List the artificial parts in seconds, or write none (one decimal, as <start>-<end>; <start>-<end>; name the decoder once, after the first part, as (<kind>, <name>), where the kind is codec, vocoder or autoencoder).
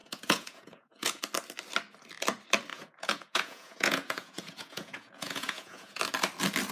0.0-1.2 (vocoder, Vocos); 2.7-6.0